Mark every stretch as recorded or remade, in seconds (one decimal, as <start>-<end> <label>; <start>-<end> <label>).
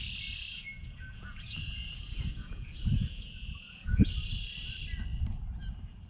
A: 0.0-0.5 recorded; 0.5-4.1 remade; 4.1-6.1 recorded